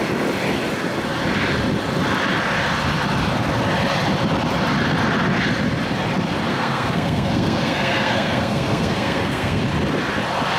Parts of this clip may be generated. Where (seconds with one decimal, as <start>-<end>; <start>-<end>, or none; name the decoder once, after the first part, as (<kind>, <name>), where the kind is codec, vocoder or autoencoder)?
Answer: 6.5-9.6 (codec, SNAC)